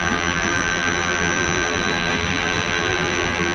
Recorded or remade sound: remade